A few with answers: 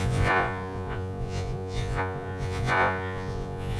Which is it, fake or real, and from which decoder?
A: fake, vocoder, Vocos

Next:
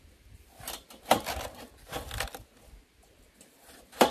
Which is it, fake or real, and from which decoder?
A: real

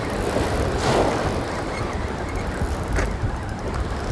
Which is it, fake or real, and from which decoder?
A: real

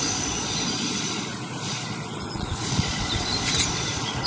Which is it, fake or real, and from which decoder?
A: fake, vocoder, Vocos